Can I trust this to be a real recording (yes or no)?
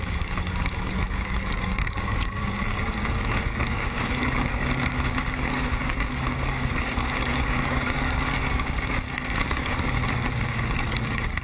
no